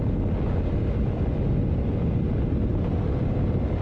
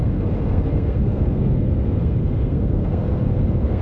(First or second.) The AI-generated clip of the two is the second